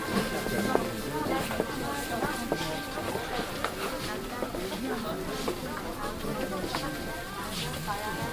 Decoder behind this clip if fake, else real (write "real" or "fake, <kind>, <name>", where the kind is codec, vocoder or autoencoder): real